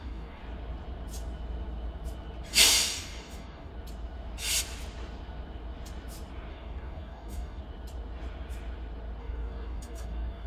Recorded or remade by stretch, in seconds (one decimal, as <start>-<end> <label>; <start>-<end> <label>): 0.0-0.4 remade; 0.4-2.5 recorded; 2.5-3.7 remade; 3.7-6.5 recorded; 6.5-7.6 remade; 7.6-9.2 recorded; 9.2-10.5 remade